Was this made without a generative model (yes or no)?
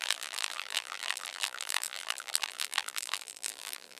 no